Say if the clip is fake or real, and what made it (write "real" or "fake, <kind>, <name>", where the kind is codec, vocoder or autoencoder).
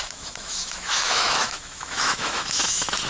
fake, autoencoder, DAC-VAE